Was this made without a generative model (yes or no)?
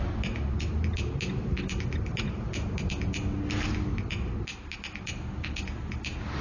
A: yes